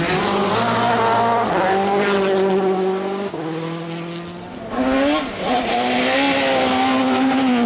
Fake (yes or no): no